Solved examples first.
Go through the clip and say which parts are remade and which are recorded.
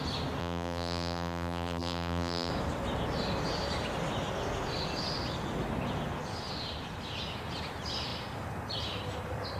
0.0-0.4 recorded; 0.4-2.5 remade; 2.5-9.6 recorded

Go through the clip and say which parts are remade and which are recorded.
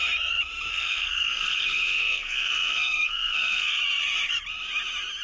0.0-0.7 recorded; 0.7-3.8 remade; 3.8-5.2 recorded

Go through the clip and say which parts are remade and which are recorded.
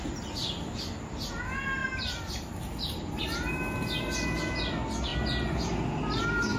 0.0-6.6 recorded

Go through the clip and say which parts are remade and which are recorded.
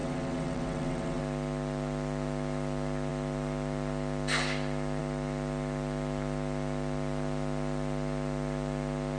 0.0-1.2 remade; 1.2-9.2 recorded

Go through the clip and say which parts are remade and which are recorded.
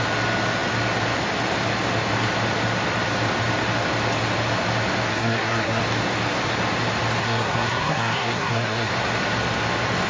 0.0-5.1 recorded; 5.1-5.8 remade; 5.8-7.2 recorded; 7.2-8.9 remade; 8.9-10.1 recorded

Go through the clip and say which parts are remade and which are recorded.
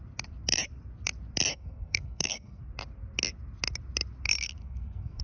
0.0-1.5 recorded; 1.5-2.6 remade; 2.6-4.6 recorded; 4.6-5.2 remade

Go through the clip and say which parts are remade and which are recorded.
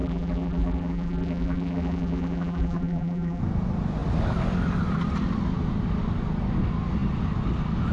0.0-3.4 remade; 3.4-7.9 recorded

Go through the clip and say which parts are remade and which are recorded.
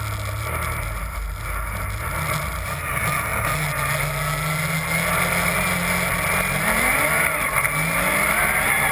0.0-8.9 recorded